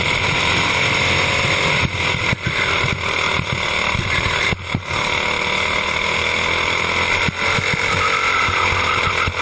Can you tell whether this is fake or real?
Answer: real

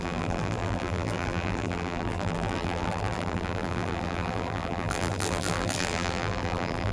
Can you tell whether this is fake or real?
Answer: fake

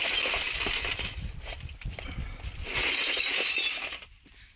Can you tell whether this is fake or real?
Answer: real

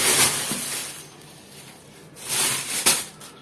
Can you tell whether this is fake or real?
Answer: real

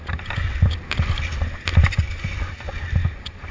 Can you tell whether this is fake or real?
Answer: real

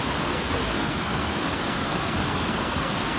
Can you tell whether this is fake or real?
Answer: fake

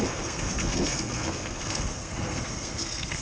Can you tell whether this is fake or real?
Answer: fake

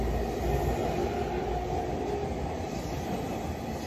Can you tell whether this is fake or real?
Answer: real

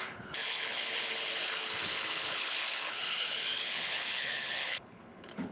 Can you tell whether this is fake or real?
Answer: fake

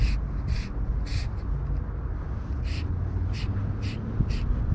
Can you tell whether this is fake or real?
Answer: real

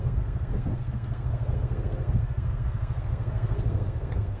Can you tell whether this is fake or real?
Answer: fake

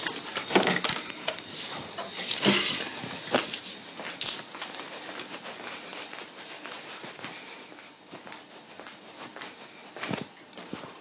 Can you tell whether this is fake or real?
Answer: real